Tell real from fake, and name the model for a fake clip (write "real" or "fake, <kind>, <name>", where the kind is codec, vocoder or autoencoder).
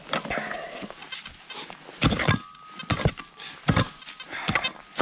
real